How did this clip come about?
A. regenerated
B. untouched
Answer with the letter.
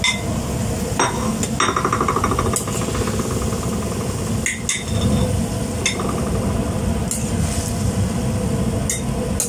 B